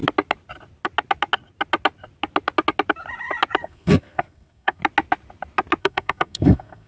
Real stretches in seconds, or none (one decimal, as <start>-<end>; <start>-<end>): 0.0-3.6; 4.8-5.8